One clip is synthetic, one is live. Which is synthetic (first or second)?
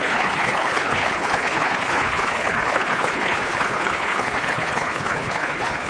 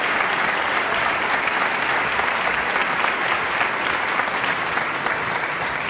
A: first